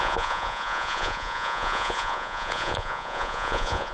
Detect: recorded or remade remade